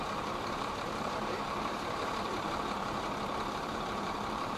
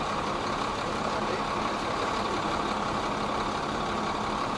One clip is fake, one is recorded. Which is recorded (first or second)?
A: second